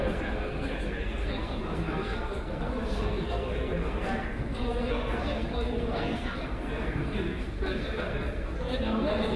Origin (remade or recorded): remade